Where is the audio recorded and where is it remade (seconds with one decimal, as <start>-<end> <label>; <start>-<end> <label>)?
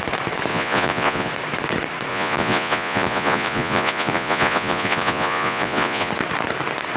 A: 0.0-0.5 recorded; 0.5-1.3 remade; 1.3-2.1 recorded; 2.1-6.1 remade; 6.1-7.0 recorded